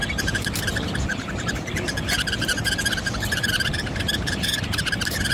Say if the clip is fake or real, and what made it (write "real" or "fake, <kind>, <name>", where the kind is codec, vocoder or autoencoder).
fake, vocoder, BigVGAN v2